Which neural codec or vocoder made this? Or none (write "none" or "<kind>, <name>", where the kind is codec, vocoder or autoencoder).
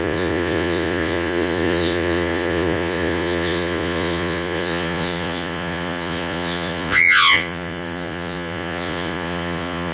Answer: vocoder, Vocos